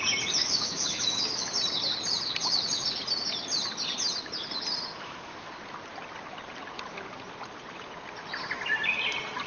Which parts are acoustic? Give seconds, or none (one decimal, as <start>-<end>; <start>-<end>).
0.0-0.4; 1.4-4.9; 5.5-9.5